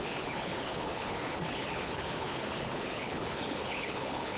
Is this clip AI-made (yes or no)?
yes